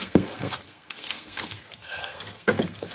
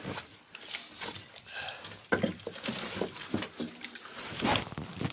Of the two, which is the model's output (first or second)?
first